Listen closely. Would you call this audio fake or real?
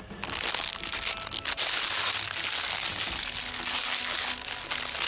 real